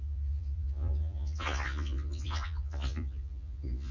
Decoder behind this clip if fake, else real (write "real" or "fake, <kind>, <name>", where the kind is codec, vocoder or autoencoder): fake, vocoder, Vocos